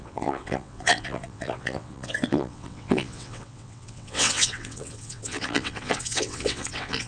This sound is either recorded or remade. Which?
remade